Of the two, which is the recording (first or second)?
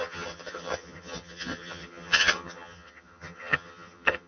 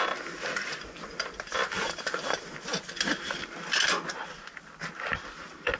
second